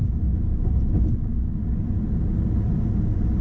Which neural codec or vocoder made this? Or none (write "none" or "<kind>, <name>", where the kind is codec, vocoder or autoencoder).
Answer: none